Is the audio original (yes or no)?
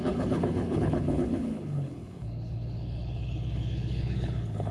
no